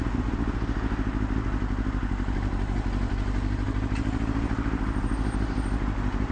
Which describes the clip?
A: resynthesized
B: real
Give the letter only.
B